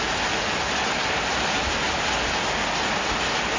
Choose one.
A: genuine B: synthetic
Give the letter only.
A